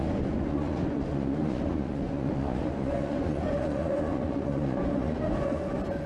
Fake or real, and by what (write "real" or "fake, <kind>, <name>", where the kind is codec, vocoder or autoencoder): fake, vocoder, Vocos